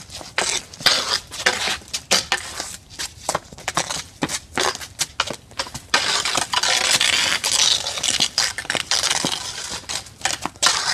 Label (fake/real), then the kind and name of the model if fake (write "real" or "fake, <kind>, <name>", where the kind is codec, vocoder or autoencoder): real